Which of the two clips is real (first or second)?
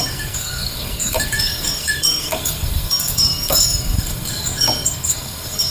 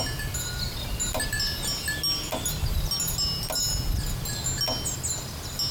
second